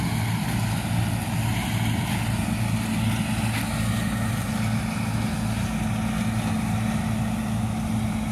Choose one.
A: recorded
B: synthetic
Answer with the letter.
A